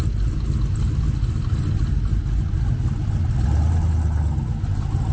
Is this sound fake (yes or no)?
no